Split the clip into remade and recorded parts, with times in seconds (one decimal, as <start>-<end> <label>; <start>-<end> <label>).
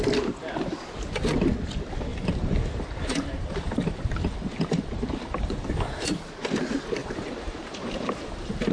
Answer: 0.0-2.1 recorded; 2.1-6.0 remade; 6.0-7.0 recorded; 7.0-8.7 remade